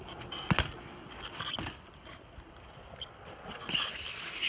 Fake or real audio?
real